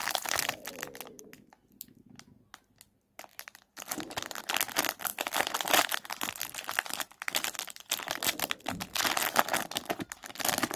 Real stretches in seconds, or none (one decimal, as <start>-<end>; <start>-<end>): 1.2-5.1; 8.6-10.8